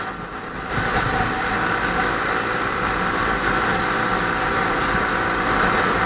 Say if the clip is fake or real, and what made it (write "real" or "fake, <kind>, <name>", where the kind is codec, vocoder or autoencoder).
real